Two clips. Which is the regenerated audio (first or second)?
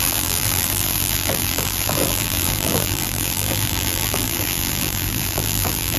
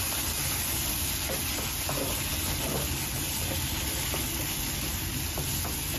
first